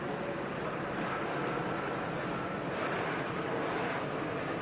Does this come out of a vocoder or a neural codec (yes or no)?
no